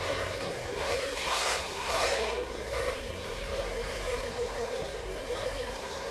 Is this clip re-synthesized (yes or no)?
yes